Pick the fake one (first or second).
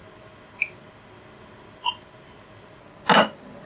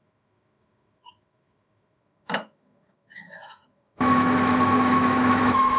second